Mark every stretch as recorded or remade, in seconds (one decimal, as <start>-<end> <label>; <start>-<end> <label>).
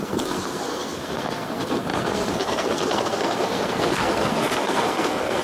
0.0-5.4 remade